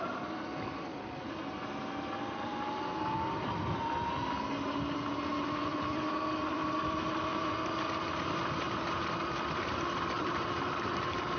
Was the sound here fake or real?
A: real